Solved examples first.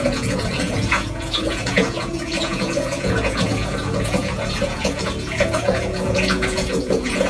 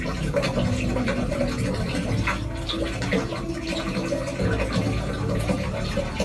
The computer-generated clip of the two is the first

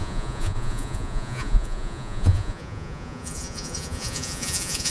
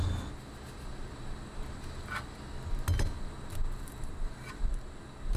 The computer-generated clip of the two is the first